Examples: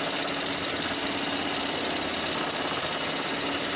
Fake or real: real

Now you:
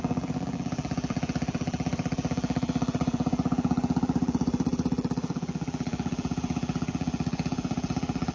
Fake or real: fake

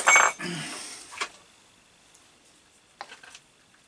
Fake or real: real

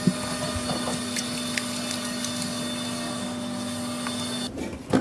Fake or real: real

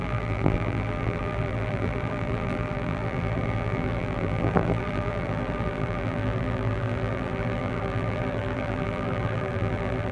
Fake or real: fake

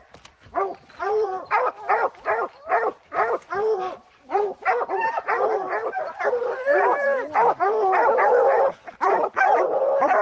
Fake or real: fake